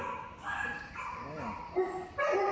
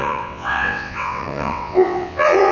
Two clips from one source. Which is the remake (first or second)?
second